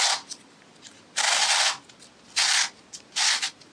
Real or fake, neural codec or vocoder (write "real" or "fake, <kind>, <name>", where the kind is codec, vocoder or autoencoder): real